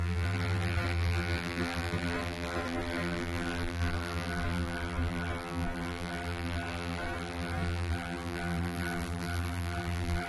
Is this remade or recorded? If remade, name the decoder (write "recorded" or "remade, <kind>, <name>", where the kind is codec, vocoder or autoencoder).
remade, vocoder, BigVGAN v2